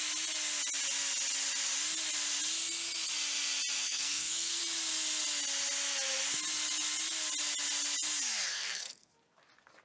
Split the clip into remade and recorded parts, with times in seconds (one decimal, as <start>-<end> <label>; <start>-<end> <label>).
0.0-3.8 recorded; 3.8-4.6 remade; 4.6-8.5 recorded; 8.5-9.1 remade; 9.1-9.8 recorded